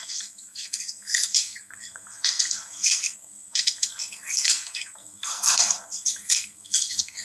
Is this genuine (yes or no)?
no